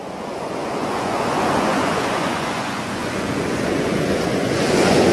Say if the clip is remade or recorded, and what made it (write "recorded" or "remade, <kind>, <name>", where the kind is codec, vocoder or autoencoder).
remade, vocoder, Vocos